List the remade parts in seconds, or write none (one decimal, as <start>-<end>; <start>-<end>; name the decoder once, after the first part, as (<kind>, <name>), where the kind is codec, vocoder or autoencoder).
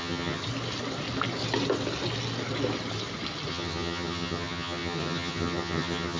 0.0-0.4 (vocoder, HiFi-GAN); 3.5-6.2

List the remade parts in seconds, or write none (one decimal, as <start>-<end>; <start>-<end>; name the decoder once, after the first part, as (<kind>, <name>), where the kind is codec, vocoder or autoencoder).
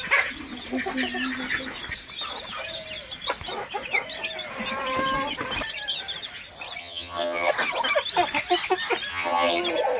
6.8-7.5 (vocoder, HiFi-GAN); 9.1-9.6